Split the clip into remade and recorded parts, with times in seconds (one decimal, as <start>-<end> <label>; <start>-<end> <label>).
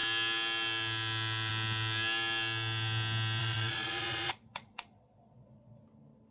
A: 0.0-3.4 recorded; 3.4-5.8 remade; 5.8-6.3 recorded